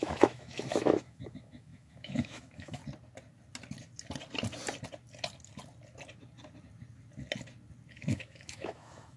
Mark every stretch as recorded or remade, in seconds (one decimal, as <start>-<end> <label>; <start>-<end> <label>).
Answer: 0.0-2.8 remade; 2.8-7.9 recorded; 7.9-9.2 remade